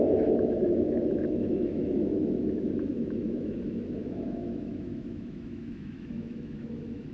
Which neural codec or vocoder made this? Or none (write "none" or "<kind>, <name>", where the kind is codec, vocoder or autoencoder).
autoencoder, DAC-VAE